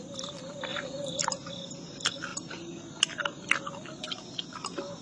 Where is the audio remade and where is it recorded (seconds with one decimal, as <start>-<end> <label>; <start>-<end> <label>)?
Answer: 0.0-5.0 recorded